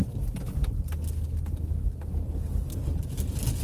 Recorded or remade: recorded